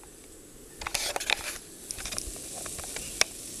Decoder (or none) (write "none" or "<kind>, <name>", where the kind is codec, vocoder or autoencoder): none